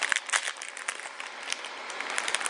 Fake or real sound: real